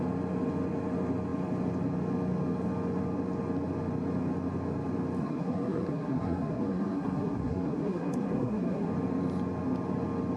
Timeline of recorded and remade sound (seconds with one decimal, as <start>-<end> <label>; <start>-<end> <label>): 0.0-5.2 recorded; 5.2-8.9 remade; 8.9-10.4 recorded